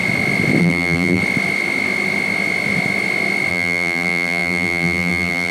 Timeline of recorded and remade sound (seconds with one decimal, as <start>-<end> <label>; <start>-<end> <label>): 0.0-0.6 recorded; 0.6-1.2 remade; 1.2-3.5 recorded; 3.5-5.5 remade